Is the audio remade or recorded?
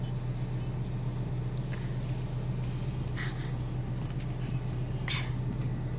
recorded